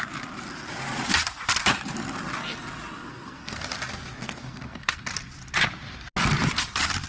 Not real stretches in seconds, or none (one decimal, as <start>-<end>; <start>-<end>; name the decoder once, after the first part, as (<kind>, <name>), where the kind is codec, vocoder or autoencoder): 3.1-3.6 (codec, SNAC); 4.2-5.0